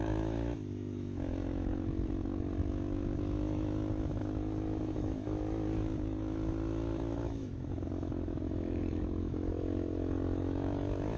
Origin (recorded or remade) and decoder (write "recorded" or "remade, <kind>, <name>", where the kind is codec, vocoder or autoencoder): remade, autoencoder, DAC-VAE